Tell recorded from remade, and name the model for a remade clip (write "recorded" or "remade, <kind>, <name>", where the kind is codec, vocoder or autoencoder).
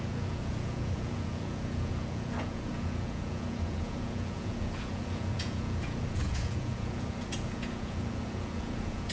remade, vocoder, Vocos